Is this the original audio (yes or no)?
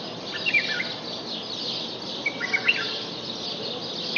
yes